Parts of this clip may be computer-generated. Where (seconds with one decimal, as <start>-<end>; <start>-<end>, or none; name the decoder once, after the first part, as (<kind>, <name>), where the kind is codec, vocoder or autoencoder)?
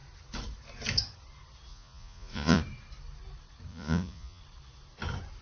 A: 1.7-2.6 (vocoder, Vocos); 3.7-4.4